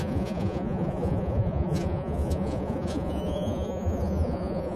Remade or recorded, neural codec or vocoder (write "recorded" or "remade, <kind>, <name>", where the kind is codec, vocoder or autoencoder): remade, vocoder, Vocos